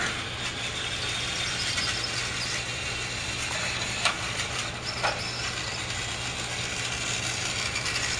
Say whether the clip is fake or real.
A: real